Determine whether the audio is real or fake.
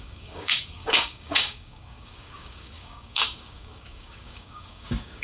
fake